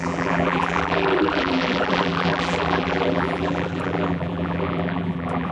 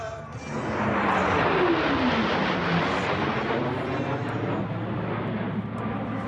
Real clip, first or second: second